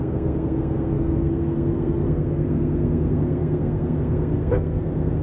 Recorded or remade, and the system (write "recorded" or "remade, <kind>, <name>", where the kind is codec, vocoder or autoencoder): remade, codec, SNAC